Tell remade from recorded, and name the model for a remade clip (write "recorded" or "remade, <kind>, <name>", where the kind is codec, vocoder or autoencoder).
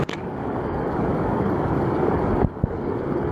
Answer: remade, codec, DAC